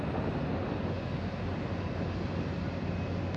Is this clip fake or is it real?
real